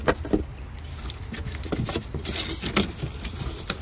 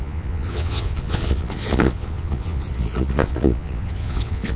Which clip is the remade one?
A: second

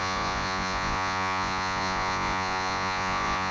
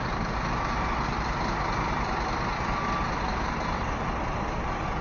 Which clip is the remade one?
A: first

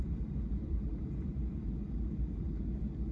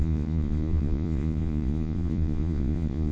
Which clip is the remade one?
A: second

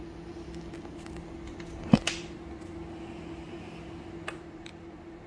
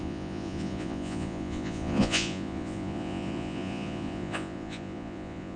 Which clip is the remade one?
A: second